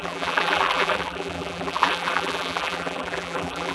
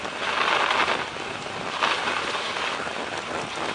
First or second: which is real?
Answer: second